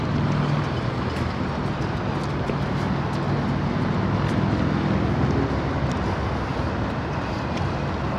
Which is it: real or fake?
real